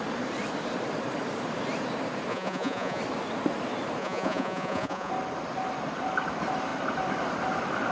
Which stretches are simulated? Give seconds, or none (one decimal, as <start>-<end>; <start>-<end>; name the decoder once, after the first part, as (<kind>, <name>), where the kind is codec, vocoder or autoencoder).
2.3-3.0 (vocoder, Vocos); 4.0-5.1